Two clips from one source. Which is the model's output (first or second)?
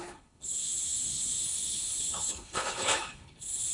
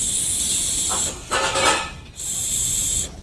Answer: first